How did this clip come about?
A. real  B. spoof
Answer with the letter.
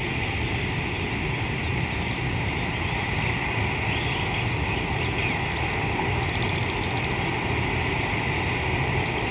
A